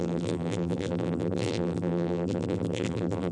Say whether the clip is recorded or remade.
remade